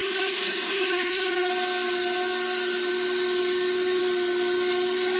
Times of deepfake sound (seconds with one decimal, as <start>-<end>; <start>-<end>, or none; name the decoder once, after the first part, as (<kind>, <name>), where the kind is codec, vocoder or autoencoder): 0.0-1.5 (codec, SNAC)